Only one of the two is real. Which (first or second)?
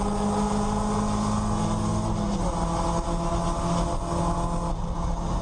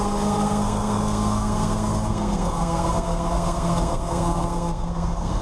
first